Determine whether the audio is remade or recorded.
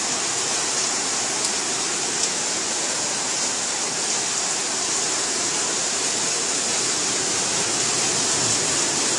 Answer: recorded